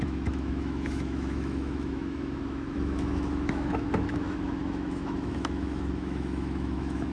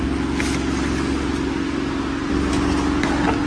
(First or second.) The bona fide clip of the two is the second